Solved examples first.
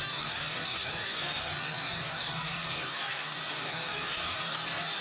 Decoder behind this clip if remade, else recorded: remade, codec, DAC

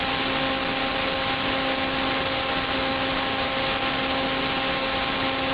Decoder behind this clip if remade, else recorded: recorded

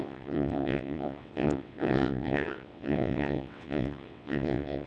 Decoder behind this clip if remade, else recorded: remade, vocoder, WaveNeXt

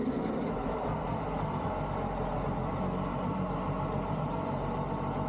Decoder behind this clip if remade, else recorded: recorded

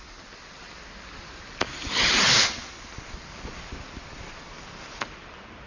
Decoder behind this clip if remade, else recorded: recorded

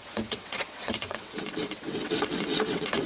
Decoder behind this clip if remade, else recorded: remade, vocoder, WaveNeXt